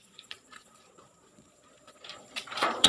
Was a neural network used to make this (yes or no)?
yes